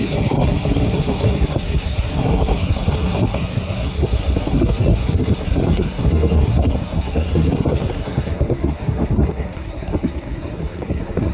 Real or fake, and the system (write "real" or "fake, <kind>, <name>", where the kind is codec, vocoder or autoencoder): fake, codec, SNAC